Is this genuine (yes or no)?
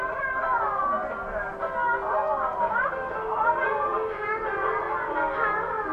yes